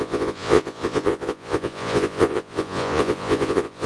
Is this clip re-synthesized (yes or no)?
yes